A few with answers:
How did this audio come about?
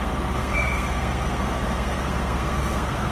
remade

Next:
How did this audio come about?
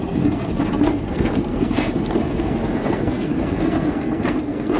remade